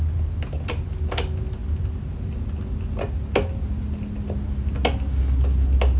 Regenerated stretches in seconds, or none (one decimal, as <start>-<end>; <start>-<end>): none